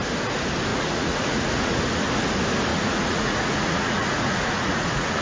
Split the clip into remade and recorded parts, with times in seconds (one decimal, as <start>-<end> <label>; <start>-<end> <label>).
0.0-0.7 recorded; 0.7-1.8 remade; 1.8-2.7 recorded; 2.7-5.2 remade